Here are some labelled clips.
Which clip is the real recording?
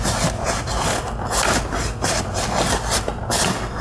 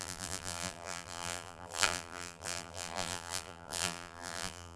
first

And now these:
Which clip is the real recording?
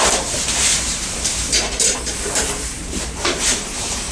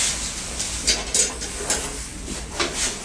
second